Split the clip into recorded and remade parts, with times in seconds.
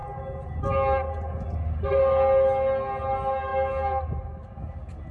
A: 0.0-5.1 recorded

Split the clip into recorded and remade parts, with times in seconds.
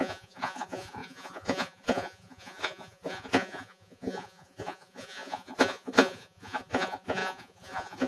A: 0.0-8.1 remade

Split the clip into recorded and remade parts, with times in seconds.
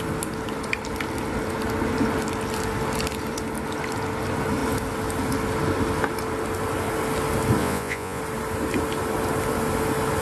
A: 0.0-7.6 recorded; 7.6-8.2 remade; 8.2-10.2 recorded